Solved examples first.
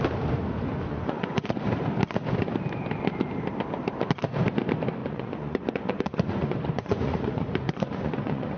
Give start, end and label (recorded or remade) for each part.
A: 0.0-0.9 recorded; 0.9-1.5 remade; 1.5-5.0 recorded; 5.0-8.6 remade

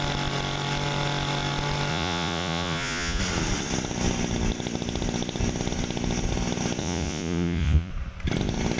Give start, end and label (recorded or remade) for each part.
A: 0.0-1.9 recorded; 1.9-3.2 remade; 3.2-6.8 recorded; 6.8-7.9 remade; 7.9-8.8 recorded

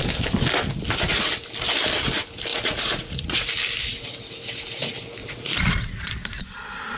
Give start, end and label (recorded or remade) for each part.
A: 0.0-2.5 recorded; 2.5-3.5 remade; 3.5-5.2 recorded; 5.2-6.1 remade; 6.1-7.0 recorded

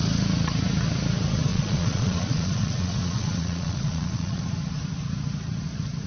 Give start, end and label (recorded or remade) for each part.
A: 0.0-1.5 recorded; 1.5-4.4 remade; 4.4-6.1 recorded

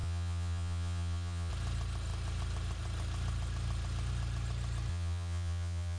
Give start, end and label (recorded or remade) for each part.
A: 0.0-1.5 remade; 1.5-4.9 recorded; 4.9-6.0 remade

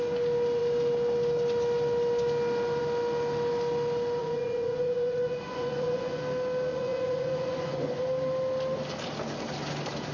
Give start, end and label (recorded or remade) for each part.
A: 0.0-4.2 recorded; 4.2-6.2 remade; 6.2-6.7 recorded; 6.7-8.0 remade; 8.0-10.1 recorded